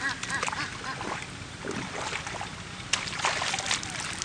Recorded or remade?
recorded